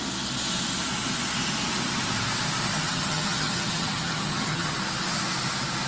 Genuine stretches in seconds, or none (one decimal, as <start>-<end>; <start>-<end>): 0.0-2.7; 4.7-5.9